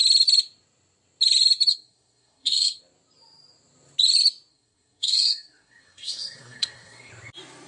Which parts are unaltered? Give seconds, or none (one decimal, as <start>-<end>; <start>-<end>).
0.0-1.7; 2.8-4.5; 7.1-7.7